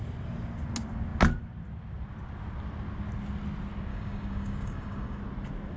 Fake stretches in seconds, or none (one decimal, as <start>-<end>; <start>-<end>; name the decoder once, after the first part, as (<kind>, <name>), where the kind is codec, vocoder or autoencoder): 3.9-5.2 (codec, DAC)